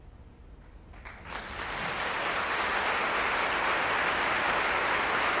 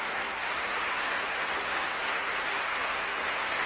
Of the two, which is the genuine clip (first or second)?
first